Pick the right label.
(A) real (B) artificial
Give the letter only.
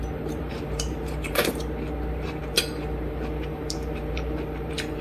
B